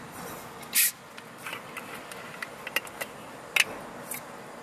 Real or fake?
real